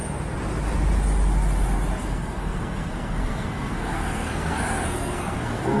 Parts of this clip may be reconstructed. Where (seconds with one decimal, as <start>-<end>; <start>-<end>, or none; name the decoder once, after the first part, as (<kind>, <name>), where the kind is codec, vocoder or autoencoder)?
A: 2.0-5.8 (codec, SNAC)